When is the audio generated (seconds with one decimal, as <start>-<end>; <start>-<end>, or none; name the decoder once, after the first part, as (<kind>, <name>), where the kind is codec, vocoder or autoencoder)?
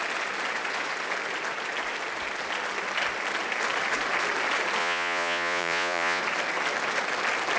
4.8-6.2 (vocoder, Vocos)